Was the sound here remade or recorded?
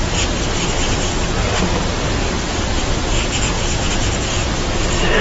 recorded